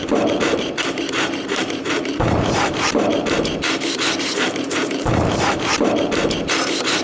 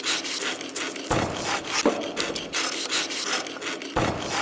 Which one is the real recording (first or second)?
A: second